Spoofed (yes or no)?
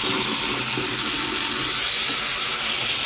no